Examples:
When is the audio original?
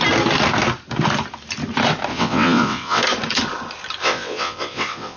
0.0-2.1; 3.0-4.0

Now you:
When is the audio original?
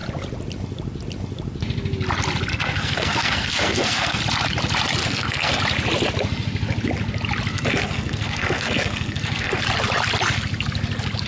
0.0-2.5; 4.2-5.0; 5.6-7.5; 9.6-11.3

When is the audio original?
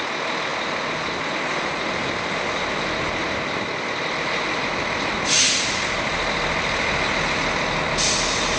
0.0-8.6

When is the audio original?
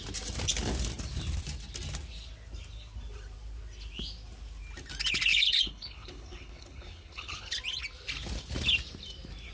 0.0-5.3; 7.6-9.5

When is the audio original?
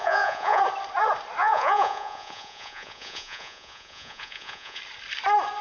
0.6-1.4; 4.8-5.6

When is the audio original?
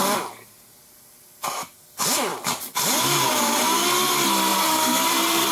0.0-2.3; 3.6-4.5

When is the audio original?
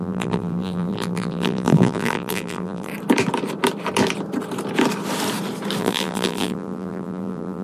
2.9-5.8